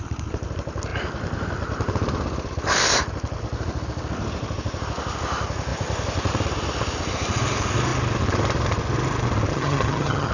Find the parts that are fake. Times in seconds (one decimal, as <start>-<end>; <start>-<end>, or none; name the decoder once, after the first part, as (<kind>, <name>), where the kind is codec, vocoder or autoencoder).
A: 9.5-10.3 (vocoder, HiFi-GAN)